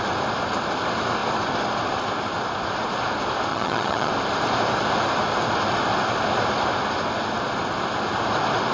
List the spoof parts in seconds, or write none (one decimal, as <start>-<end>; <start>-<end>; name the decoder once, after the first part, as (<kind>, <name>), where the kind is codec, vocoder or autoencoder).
3.5-4.1 (vocoder, HiFi-GAN)